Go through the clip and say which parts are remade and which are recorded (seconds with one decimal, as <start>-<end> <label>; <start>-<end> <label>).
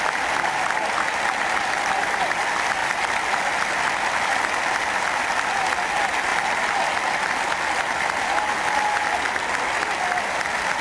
0.0-2.8 recorded; 2.8-3.7 remade; 3.7-6.3 recorded; 6.3-7.3 remade; 7.3-10.8 recorded